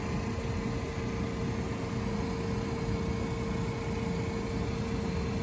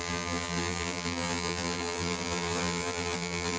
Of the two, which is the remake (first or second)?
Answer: second